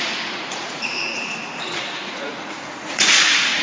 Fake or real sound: fake